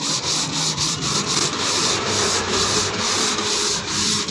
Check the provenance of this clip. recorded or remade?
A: remade